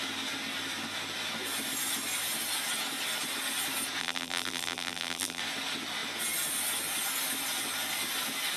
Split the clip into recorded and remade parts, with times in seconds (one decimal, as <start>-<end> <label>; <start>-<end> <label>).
0.0-4.0 recorded; 4.0-5.4 remade; 5.4-8.6 recorded